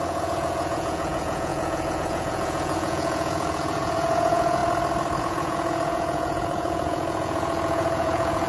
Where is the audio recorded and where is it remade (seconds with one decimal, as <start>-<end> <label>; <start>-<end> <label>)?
0.0-4.6 remade; 4.6-5.2 recorded; 5.2-8.5 remade